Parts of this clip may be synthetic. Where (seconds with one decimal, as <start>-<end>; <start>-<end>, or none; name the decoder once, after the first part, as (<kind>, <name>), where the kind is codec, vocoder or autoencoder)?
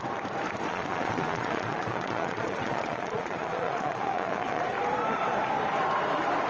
0.7-4.6 (vocoder, Vocos)